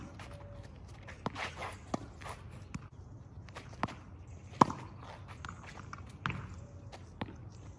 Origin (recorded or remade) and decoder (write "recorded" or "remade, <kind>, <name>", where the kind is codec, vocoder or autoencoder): recorded